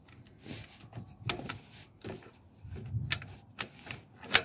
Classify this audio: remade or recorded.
recorded